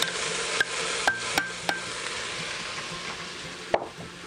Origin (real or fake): real